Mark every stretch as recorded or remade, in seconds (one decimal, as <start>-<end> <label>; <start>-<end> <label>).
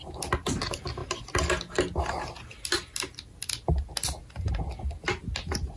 0.0-5.8 recorded